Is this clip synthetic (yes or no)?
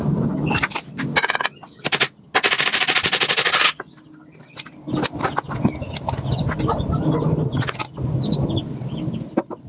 no